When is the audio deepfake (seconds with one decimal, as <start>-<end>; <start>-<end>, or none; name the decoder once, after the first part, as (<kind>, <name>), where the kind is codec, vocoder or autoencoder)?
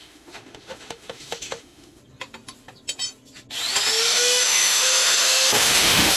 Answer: 0.0-2.0 (autoencoder, DAC-VAE); 4.0-6.2